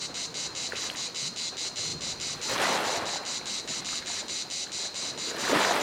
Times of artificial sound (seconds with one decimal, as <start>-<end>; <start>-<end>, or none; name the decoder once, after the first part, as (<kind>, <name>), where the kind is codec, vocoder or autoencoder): none